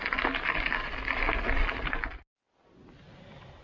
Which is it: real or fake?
real